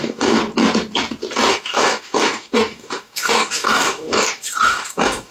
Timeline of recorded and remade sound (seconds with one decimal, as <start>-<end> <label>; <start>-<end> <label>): 0.0-0.4 remade; 0.4-1.5 recorded; 1.5-5.3 remade

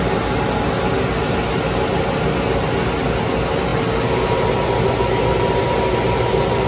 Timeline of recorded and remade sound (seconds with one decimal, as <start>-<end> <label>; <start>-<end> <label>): 0.0-6.7 recorded

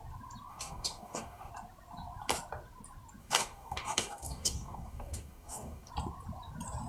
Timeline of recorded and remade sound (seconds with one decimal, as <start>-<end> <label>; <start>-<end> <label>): 0.0-0.5 recorded; 0.5-1.5 remade; 1.5-3.2 recorded; 3.2-5.9 remade; 5.9-6.9 recorded

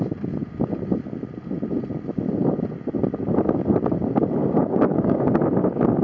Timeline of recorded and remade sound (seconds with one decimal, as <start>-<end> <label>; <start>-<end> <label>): 0.0-4.4 recorded; 4.4-5.3 remade; 5.3-6.0 recorded

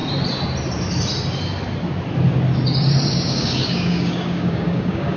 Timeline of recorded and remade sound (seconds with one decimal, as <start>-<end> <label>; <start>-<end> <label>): 0.0-3.1 recorded; 3.1-5.2 remade

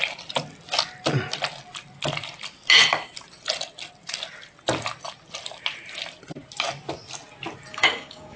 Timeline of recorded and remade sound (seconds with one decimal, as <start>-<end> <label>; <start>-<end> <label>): 0.0-7.7 recorded; 7.7-8.4 remade

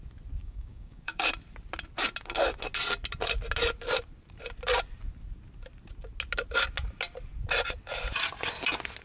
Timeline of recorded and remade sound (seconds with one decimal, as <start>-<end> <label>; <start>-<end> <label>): 0.0-0.4 recorded; 0.4-1.3 remade; 1.3-9.0 recorded